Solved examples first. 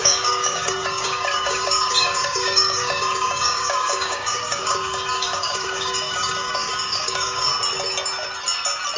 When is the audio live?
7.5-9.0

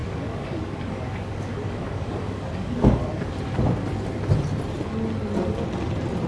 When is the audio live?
3.3-6.3

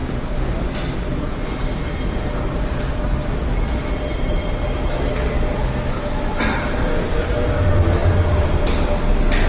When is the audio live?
0.0-9.5

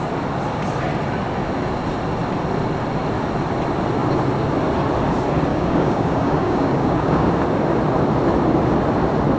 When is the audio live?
0.0-5.5; 7.3-9.4

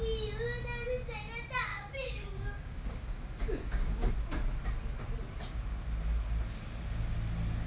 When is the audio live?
0.0-1.7; 4.1-7.7

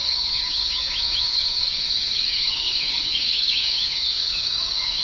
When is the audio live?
none

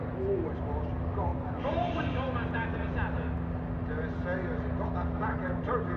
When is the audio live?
0.0-6.0

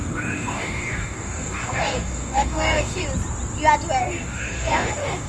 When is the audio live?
3.0-4.0